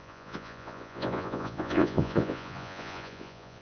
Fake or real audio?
fake